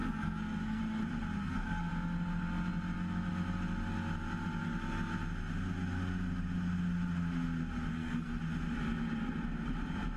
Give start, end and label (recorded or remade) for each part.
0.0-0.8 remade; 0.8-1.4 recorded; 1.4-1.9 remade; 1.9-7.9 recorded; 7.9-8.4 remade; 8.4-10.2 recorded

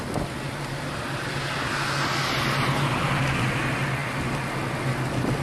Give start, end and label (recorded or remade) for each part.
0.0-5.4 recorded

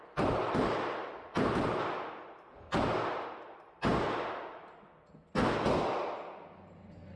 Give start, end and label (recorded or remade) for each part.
0.0-7.2 recorded